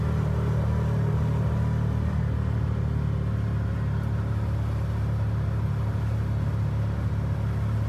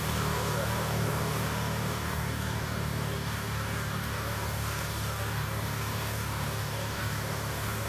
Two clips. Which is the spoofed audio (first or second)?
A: second